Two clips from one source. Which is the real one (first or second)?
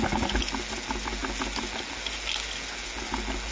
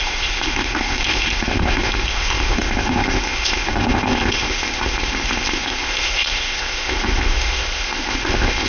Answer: first